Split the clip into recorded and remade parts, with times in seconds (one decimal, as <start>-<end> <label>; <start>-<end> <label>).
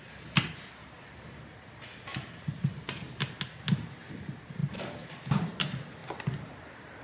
0.0-7.0 recorded